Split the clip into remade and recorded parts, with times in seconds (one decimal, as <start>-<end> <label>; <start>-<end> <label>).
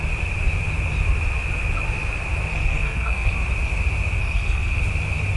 0.0-2.5 recorded; 2.5-3.3 remade; 3.3-4.2 recorded; 4.2-4.8 remade; 4.8-5.4 recorded